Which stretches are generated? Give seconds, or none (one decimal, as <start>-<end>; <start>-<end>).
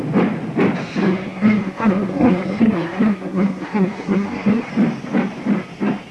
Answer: 1.0-4.7